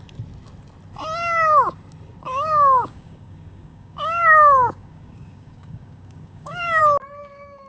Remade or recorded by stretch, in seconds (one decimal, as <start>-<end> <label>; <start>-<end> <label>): 0.0-2.2 recorded; 2.2-6.8 remade; 6.8-7.7 recorded